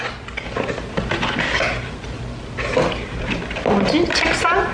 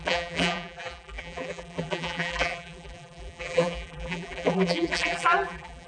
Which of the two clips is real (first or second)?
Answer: first